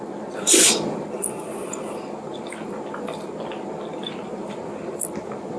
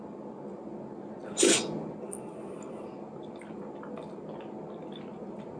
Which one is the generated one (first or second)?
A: first